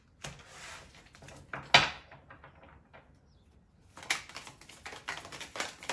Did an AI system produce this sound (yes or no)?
no